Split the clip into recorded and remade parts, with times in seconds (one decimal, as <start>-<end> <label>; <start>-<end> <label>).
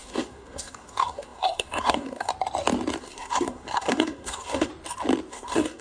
0.0-2.3 remade; 2.3-3.0 recorded; 3.0-4.7 remade; 4.7-5.3 recorded; 5.3-5.8 remade